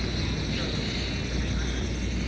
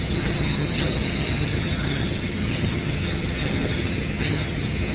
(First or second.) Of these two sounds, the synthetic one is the second